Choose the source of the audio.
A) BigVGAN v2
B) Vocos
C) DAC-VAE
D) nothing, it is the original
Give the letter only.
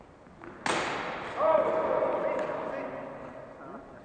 D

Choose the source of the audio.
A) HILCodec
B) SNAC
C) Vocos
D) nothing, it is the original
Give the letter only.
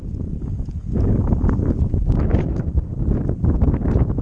D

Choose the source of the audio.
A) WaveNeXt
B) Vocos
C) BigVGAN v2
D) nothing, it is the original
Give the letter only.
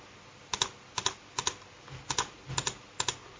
D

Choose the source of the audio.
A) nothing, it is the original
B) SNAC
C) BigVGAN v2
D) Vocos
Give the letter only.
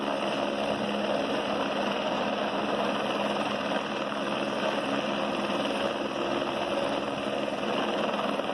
A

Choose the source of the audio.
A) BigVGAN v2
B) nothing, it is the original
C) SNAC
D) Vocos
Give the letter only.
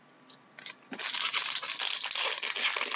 B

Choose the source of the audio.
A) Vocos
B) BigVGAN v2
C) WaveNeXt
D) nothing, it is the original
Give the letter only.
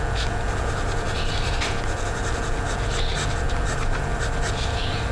D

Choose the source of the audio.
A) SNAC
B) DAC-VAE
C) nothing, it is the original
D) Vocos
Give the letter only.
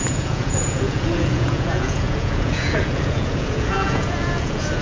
D